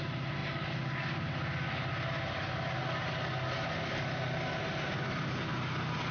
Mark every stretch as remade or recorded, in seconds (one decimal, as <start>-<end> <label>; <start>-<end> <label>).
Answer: 0.0-6.1 recorded